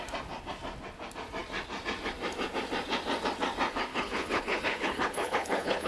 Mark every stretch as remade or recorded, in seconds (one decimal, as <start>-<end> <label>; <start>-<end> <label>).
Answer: 0.0-3.9 recorded; 3.9-5.9 remade